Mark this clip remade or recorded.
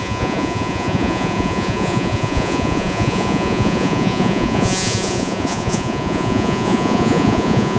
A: remade